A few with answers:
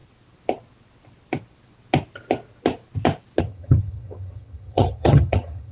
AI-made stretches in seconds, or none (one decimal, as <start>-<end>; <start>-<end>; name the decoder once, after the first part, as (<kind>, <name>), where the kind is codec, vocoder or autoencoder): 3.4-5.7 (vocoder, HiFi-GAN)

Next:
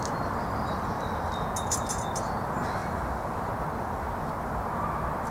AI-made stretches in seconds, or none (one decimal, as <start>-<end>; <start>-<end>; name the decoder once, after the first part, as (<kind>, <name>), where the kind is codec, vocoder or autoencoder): 2.8-3.5 (vocoder, BigVGAN v2)

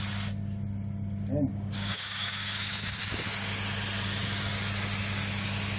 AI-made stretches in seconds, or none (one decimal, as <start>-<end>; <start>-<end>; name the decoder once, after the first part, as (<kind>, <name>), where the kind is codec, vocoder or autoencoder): 1.5-3.2 (codec, DAC)

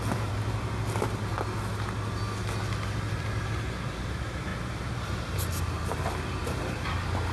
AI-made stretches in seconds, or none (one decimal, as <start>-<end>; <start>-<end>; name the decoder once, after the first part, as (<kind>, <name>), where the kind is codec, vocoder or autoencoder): 0.0-1.3 (vocoder, BigVGAN v2); 3.2-7.3

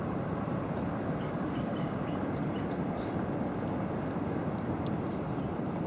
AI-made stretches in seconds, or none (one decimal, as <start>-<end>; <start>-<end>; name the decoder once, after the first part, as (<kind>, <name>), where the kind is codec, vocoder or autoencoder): 1.7-2.2 (codec, DAC)

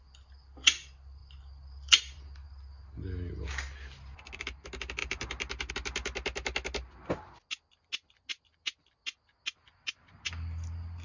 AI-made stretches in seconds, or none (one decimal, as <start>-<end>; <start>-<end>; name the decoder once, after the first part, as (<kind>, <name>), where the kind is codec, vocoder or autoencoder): none

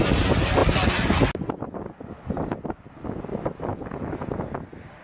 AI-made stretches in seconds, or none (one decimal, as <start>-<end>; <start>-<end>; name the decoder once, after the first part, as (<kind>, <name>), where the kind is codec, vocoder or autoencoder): none